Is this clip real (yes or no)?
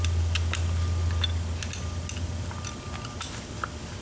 yes